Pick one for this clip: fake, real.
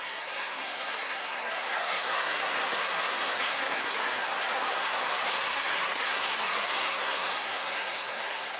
fake